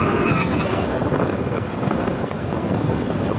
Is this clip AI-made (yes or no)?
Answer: yes